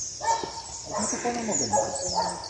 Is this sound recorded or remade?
recorded